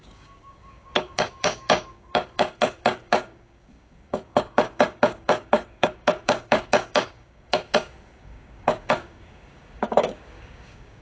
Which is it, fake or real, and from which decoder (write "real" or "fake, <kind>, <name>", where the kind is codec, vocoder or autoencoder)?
fake, codec, DAC